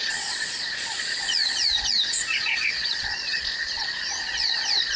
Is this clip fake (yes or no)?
yes